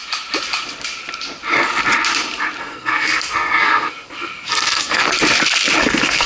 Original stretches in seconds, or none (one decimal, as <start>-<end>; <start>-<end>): 0.0-2.6; 5.1-5.8